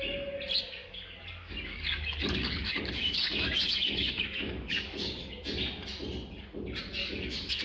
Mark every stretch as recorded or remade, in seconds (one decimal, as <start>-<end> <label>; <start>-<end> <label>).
0.0-0.8 recorded; 0.8-5.3 remade; 5.3-7.0 recorded; 7.0-7.6 remade

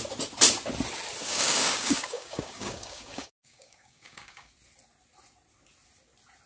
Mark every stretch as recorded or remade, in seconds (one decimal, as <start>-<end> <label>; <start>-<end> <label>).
0.0-1.2 recorded; 1.2-4.5 remade; 4.5-6.5 recorded